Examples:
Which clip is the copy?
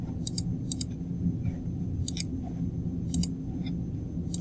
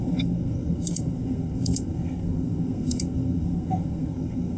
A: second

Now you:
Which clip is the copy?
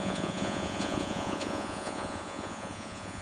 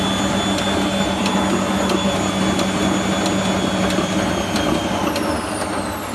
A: first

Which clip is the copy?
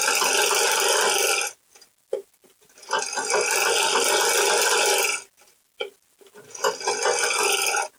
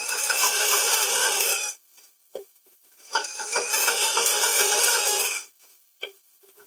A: second